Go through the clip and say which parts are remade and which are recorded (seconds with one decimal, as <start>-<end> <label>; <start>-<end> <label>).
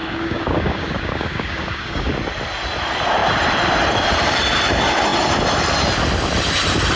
0.0-2.1 remade; 2.1-7.0 recorded